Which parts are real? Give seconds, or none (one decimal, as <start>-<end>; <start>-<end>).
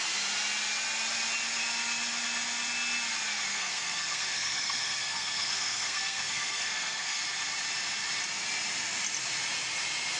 0.0-3.5; 7.2-10.2